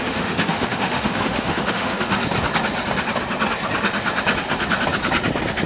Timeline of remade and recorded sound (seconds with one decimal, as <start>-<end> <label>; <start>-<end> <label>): 0.0-2.1 remade; 2.1-5.7 recorded